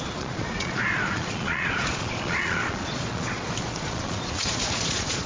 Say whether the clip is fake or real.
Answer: fake